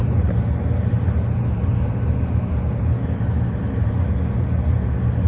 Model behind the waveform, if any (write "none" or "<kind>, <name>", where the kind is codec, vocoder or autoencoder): none